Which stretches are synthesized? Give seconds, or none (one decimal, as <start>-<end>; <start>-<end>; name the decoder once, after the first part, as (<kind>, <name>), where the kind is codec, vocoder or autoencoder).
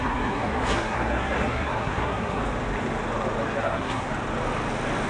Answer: 0.0-2.4 (codec, SNAC); 3.6-4.1